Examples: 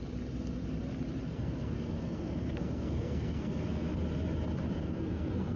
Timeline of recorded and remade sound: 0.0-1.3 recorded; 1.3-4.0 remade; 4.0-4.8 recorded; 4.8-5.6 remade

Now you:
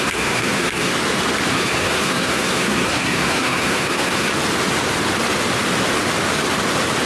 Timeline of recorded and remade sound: 0.0-0.9 remade; 0.9-1.5 recorded; 1.5-4.3 remade; 4.3-7.1 recorded

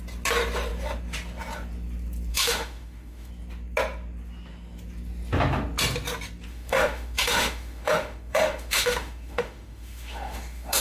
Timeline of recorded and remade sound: 0.0-2.3 recorded; 2.3-3.3 remade; 3.3-6.5 recorded; 6.5-10.8 remade

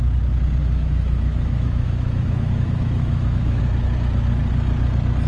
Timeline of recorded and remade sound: 0.0-0.6 recorded; 0.6-3.6 remade; 3.6-5.3 recorded

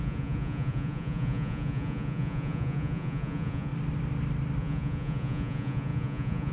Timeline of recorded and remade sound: 0.0-3.7 remade; 3.7-4.6 recorded; 4.6-6.5 remade

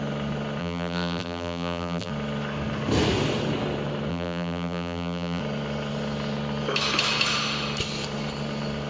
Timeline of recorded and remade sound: 0.0-0.6 recorded; 0.6-2.1 remade; 2.1-4.1 recorded; 4.1-5.4 remade; 5.4-8.9 recorded

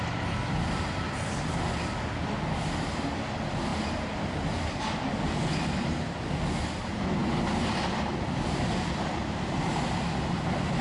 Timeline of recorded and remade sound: 0.0-10.8 recorded

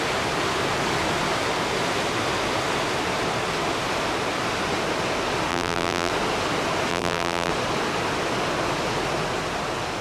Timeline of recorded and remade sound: 0.0-5.5 recorded; 5.5-6.1 remade; 6.1-6.9 recorded; 6.9-7.5 remade; 7.5-10.0 recorded